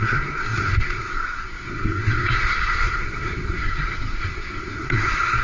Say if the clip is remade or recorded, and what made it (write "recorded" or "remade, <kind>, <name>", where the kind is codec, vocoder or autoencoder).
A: remade, codec, SNAC